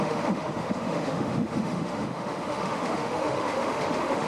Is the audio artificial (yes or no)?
yes